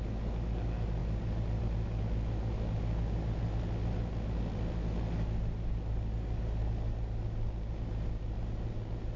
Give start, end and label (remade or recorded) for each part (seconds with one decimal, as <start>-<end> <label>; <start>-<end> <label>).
0.0-9.2 recorded